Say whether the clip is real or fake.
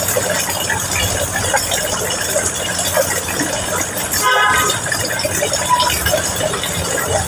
real